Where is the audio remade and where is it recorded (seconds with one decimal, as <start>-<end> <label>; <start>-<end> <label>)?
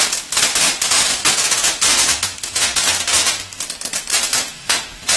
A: 0.0-0.5 recorded; 0.5-3.6 remade; 3.6-4.1 recorded; 4.1-5.2 remade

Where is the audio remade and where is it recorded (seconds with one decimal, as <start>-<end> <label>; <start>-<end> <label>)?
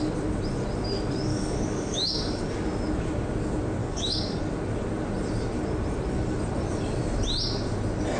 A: 0.0-1.3 recorded; 1.3-2.4 remade; 2.4-3.8 recorded; 3.8-4.4 remade; 4.4-8.2 recorded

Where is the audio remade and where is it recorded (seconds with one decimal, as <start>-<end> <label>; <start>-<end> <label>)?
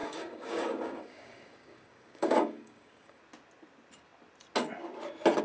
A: 0.0-3.2 remade; 3.2-5.4 recorded